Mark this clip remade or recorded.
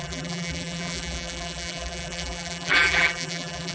remade